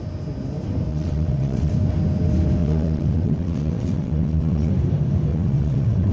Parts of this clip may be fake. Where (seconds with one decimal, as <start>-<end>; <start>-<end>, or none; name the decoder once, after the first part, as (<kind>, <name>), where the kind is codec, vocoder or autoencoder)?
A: 0.9-1.7 (vocoder, WaveNeXt); 2.6-4.7; 5.3-6.1

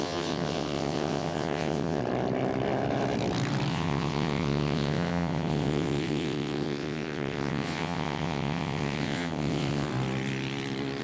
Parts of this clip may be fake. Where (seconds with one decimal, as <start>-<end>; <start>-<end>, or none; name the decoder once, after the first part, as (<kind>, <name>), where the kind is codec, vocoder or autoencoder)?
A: 0.0-2.0 (vocoder, WaveNeXt); 3.7-9.9

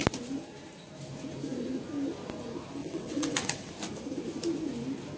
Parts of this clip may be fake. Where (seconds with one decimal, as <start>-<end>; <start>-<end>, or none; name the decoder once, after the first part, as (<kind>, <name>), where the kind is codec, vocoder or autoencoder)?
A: 2.8-3.7 (vocoder, WaveNeXt)

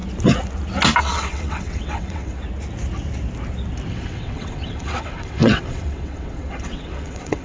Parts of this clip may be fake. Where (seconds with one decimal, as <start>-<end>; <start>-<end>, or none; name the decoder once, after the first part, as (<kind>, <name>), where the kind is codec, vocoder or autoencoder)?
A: 1.0-2.4 (vocoder, WaveNeXt); 3.9-7.4

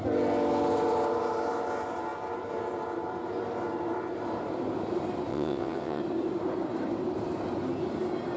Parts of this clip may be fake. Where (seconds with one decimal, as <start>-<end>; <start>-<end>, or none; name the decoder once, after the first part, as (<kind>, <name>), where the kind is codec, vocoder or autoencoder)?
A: 5.3-6.0 (vocoder, WaveNeXt)